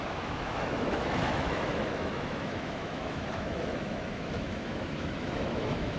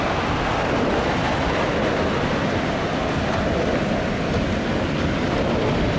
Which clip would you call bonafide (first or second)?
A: second